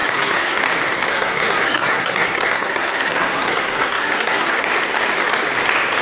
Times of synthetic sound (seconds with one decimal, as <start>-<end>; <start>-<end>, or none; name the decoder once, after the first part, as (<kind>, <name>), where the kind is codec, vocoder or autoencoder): 0.0-0.6 (codec, SNAC); 1.1-4.7